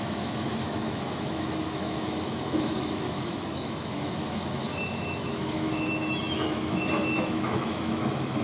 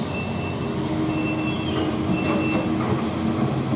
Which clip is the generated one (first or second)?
first